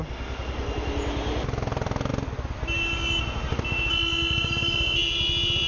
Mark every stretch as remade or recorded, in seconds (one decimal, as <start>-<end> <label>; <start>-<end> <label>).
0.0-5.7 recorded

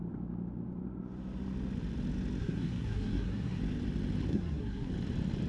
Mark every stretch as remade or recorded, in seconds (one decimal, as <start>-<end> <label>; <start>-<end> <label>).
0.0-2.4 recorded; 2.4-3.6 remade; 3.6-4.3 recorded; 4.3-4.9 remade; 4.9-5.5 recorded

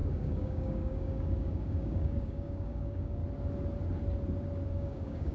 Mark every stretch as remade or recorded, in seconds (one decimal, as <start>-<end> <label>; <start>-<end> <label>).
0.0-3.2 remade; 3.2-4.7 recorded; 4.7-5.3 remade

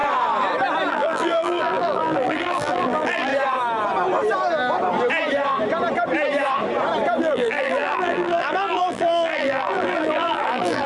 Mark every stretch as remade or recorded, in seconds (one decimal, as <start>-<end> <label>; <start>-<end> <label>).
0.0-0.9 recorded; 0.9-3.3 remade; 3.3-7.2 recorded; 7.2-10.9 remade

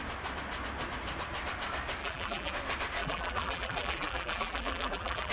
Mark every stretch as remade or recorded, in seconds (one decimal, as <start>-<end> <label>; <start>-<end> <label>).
0.0-2.0 recorded; 2.0-2.5 remade; 2.5-3.0 recorded; 3.0-5.3 remade

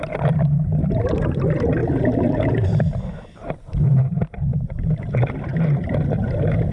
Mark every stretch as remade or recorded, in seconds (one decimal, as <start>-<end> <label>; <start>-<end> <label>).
0.0-1.8 recorded; 1.8-3.0 remade; 3.0-6.7 recorded

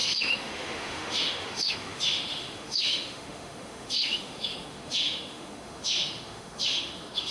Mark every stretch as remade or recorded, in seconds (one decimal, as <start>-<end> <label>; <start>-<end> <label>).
0.0-7.3 remade